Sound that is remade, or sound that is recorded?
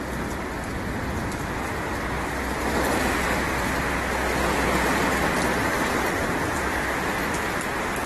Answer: recorded